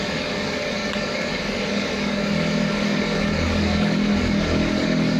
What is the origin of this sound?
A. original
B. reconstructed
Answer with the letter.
B